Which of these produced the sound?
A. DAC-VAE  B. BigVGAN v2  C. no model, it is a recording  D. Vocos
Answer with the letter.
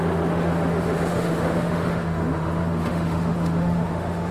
A